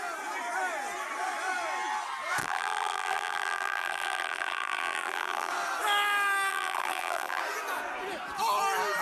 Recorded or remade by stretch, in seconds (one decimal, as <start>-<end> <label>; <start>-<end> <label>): 0.0-2.4 recorded; 2.4-5.5 remade; 5.5-6.5 recorded; 6.5-7.4 remade; 7.4-9.0 recorded